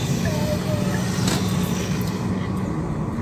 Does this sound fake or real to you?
real